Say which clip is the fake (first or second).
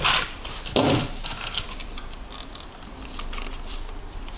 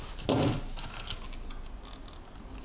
first